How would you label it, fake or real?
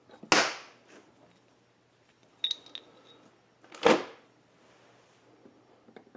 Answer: real